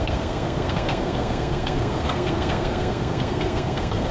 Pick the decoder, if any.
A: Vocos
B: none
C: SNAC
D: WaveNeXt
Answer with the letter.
C